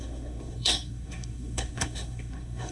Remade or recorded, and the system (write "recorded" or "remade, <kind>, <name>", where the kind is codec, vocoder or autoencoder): remade, codec, SNAC